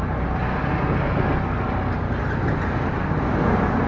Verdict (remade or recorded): recorded